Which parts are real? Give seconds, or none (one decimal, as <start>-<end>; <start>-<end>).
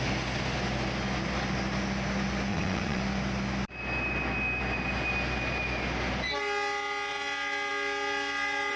0.0-2.5; 3.0-8.8